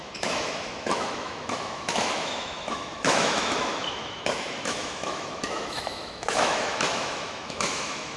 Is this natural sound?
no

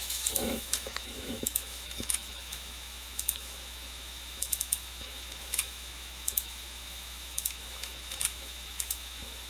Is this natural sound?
no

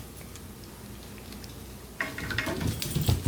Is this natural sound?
yes